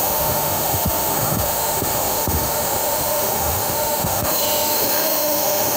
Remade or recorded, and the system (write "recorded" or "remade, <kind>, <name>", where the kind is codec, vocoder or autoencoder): remade, autoencoder, DAC-VAE